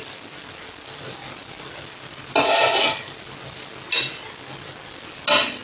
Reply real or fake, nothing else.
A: real